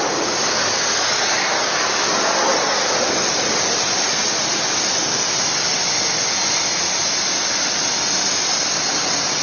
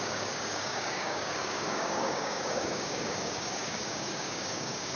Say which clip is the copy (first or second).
second